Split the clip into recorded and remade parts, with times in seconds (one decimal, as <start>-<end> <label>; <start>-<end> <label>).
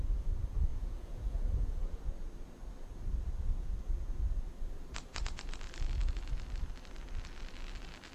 0.0-0.7 recorded; 0.7-2.0 remade; 2.0-8.1 recorded